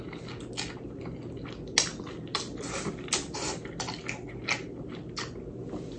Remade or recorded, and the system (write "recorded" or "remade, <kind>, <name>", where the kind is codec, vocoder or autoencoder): recorded